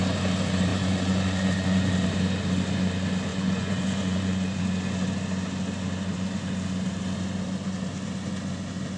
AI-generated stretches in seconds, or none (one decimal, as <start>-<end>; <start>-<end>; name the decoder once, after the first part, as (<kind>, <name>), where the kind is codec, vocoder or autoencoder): 0.7-1.9 (vocoder, Vocos); 3.3-4.6